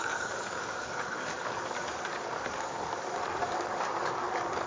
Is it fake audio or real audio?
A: fake